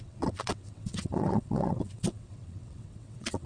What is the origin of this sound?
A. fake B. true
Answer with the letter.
A